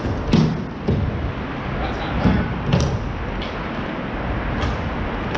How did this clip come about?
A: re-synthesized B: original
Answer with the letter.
B